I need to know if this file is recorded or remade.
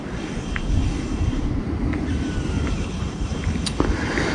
recorded